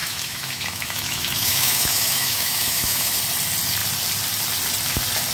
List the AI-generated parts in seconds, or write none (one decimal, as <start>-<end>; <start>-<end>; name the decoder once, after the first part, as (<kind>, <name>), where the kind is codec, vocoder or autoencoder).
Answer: 0.0-3.2 (autoencoder, DAC-VAE)